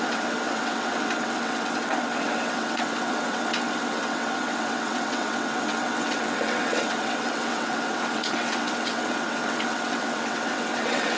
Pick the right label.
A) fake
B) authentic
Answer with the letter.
A